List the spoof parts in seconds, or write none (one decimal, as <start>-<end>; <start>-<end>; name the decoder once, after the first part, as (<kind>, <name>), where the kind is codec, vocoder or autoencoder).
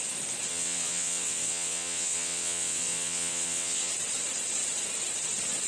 0.5-3.9 (vocoder, WaveNeXt)